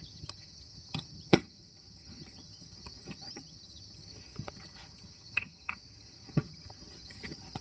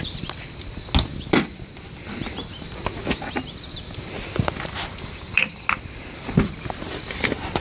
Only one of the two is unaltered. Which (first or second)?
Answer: second